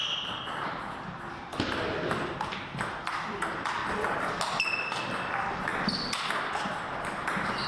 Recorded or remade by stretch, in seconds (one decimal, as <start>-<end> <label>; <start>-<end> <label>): 0.0-3.8 remade; 3.8-4.8 recorded; 4.8-5.7 remade; 5.7-6.5 recorded; 6.5-7.7 remade